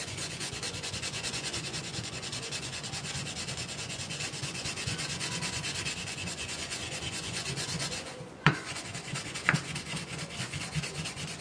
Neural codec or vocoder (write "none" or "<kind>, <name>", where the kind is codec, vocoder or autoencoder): vocoder, Vocos